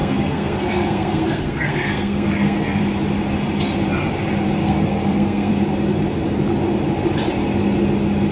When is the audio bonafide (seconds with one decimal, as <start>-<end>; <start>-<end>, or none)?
2.8-4.6; 5.5-8.3